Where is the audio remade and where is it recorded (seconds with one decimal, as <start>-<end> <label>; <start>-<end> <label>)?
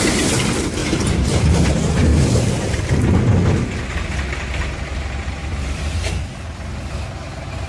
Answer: 0.0-0.8 recorded; 0.8-1.7 remade; 1.7-5.4 recorded; 5.4-6.2 remade; 6.2-7.7 recorded